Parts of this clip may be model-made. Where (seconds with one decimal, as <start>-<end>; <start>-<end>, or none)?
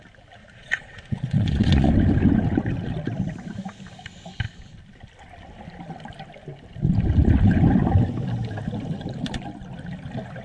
0.4-1.9